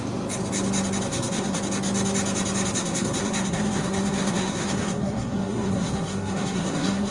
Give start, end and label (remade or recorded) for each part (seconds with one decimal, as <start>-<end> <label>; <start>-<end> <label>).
0.0-1.1 recorded; 1.1-1.6 remade; 1.6-2.8 recorded; 2.8-7.1 remade

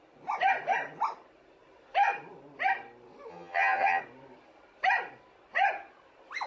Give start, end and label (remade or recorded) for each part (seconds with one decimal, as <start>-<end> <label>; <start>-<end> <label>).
0.0-3.3 recorded; 3.3-4.0 remade; 4.0-6.5 recorded

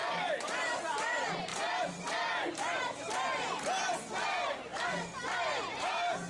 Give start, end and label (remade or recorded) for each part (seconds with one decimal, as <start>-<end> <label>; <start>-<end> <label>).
0.0-6.3 remade

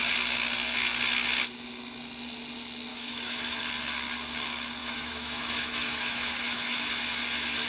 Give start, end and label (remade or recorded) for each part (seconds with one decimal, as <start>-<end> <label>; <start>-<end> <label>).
0.0-2.9 recorded; 2.9-3.6 remade; 3.6-4.8 recorded; 4.8-6.9 remade; 6.9-7.7 recorded

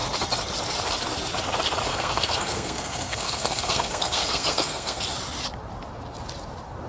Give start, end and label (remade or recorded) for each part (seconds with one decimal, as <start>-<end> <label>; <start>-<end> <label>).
0.0-1.9 recorded; 1.9-5.0 remade; 5.0-6.9 recorded

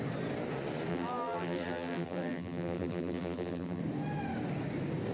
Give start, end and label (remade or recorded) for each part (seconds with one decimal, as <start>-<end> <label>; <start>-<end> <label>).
0.0-0.9 recorded; 0.9-3.8 remade; 3.8-5.1 recorded